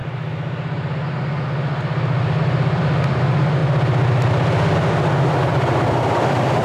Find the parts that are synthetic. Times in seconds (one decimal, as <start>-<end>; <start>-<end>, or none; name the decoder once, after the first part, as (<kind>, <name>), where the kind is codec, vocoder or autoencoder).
2.4-3.6 (vocoder, BigVGAN v2); 4.9-6.6